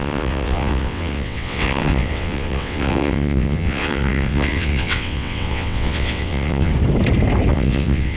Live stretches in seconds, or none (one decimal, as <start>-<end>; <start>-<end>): 6.7-7.5